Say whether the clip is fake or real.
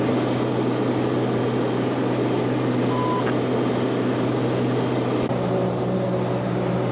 real